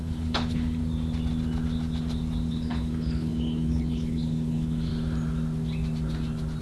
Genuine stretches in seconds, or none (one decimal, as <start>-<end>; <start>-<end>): 0.8-2.5; 4.9-6.6

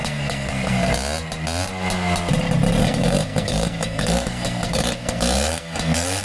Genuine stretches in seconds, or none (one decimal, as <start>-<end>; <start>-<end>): 0.9-2.8